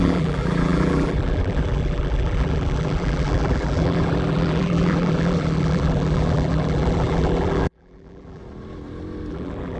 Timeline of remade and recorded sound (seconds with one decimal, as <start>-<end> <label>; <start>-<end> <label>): 0.0-8.4 remade; 8.4-9.3 recorded; 9.3-9.8 remade